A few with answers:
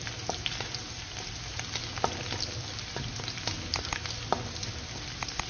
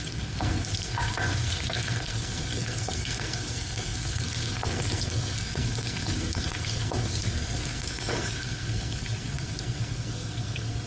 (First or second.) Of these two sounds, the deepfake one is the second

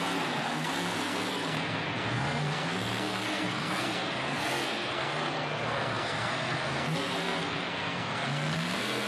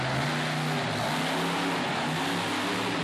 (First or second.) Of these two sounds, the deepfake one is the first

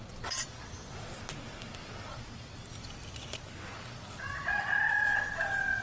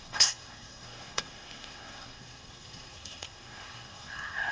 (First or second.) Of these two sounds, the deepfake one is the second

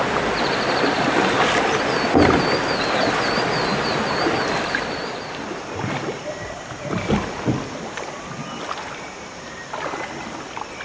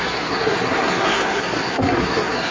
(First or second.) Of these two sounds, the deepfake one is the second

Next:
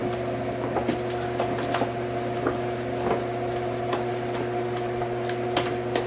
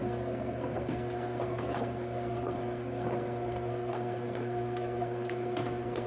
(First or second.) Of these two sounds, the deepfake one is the second